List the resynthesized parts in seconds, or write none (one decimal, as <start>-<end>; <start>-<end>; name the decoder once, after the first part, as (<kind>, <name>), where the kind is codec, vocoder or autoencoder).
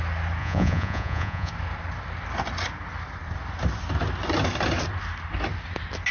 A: 0.4-1.5 (vocoder, Vocos)